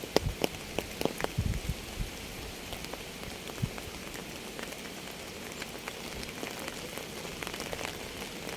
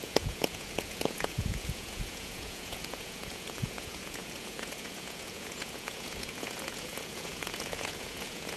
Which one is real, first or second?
first